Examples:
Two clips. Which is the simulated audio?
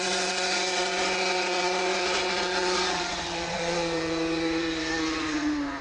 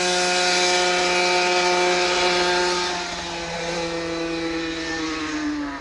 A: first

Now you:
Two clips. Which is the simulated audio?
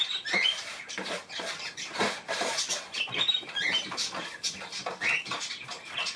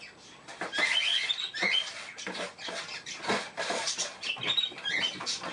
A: first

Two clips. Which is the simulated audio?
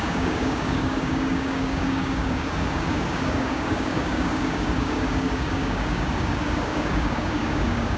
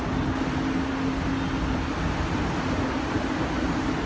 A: first